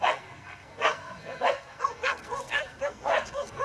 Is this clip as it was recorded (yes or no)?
no